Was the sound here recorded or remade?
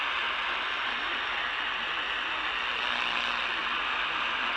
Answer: recorded